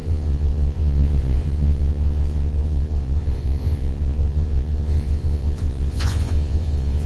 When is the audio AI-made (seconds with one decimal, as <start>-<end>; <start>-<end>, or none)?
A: 0.0-7.1